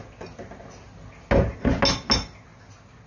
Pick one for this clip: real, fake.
real